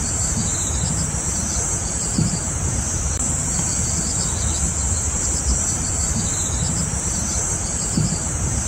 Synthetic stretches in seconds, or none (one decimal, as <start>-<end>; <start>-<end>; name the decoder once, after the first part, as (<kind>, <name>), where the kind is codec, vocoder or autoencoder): 0.0-3.7 (vocoder, BigVGAN v2); 5.1-8.7